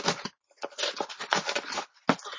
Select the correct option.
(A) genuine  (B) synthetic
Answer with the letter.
A